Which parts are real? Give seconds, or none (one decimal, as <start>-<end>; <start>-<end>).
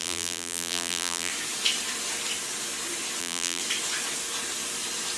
1.3-3.2; 3.6-5.2